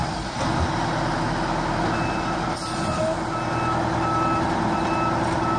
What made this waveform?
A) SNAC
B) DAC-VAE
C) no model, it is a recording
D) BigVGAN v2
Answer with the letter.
C